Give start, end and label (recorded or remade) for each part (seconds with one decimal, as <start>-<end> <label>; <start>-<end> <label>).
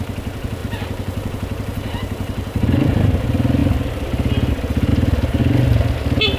0.0-0.6 recorded; 0.6-3.1 remade; 3.1-4.9 recorded; 4.9-5.4 remade; 5.4-6.4 recorded